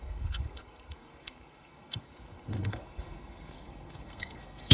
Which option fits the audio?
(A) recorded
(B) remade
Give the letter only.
B